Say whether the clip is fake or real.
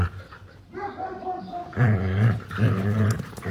fake